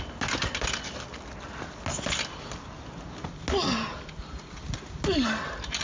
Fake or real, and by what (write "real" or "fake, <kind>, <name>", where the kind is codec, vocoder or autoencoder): real